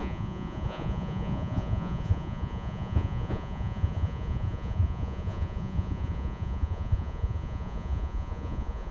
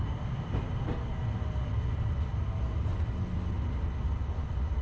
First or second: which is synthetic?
first